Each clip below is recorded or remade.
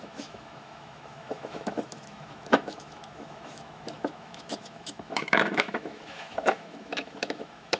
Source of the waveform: remade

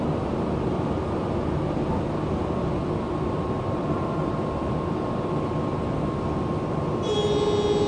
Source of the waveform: recorded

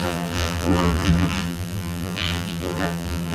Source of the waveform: remade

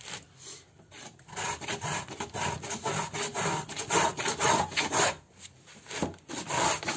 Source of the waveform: recorded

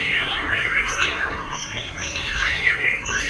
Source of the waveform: remade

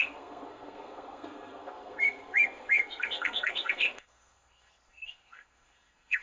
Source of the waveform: remade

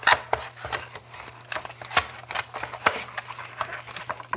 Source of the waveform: recorded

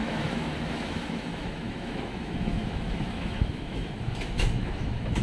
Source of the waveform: remade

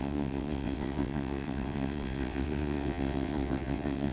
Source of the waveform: remade